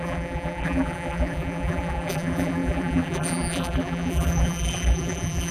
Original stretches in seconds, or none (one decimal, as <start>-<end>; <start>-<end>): none